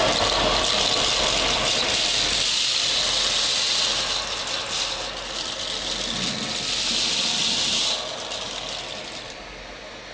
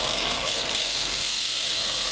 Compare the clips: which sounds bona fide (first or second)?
first